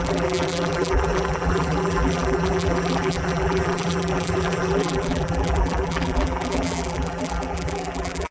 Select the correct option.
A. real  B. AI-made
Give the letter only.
B